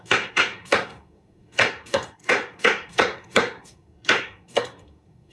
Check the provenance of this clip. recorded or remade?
remade